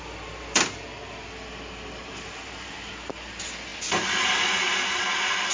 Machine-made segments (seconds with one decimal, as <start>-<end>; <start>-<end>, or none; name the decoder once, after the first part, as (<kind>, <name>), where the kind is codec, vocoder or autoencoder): 2.0-2.9 (vocoder, BigVGAN v2)